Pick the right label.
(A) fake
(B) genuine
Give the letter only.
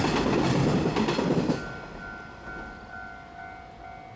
B